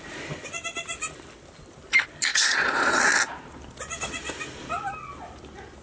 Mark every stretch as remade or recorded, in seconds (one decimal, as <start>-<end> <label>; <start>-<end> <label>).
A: 0.0-2.3 recorded; 2.3-3.0 remade; 3.0-5.8 recorded

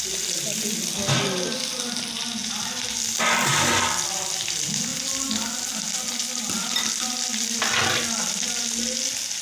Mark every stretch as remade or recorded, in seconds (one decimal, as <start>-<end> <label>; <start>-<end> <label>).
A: 0.0-9.4 recorded

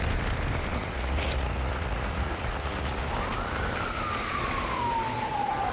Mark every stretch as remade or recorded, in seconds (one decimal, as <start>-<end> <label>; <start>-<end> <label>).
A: 0.0-0.7 recorded; 0.7-3.1 remade; 3.1-5.7 recorded

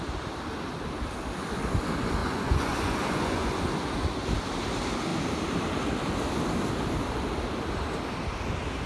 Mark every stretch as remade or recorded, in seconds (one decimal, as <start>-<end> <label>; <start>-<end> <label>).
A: 0.0-2.2 recorded; 2.2-3.6 remade; 3.6-8.9 recorded

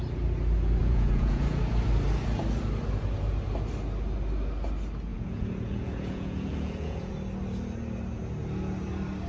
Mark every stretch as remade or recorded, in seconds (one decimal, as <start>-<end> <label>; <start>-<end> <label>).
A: 0.0-0.8 recorded; 0.8-1.6 remade; 1.6-5.1 recorded; 5.1-7.1 remade; 7.1-9.3 recorded

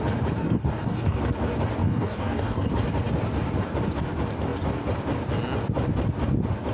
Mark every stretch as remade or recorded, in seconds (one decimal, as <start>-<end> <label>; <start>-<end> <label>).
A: 0.0-0.4 recorded; 0.4-1.2 remade; 1.2-1.8 recorded; 1.8-2.7 remade; 2.7-6.7 recorded

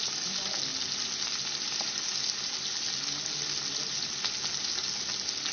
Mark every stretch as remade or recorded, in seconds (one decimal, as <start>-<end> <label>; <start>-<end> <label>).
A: 0.0-5.5 recorded

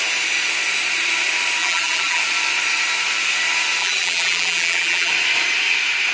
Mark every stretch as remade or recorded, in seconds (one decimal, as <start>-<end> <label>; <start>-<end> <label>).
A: 0.0-1.6 recorded; 1.6-2.2 remade; 2.2-3.8 recorded; 3.8-5.1 remade; 5.1-6.1 recorded